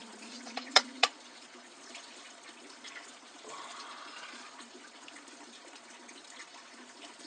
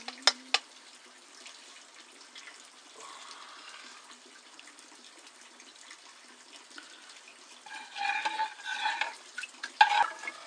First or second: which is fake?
first